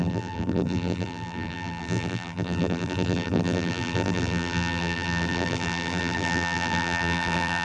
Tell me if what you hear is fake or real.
fake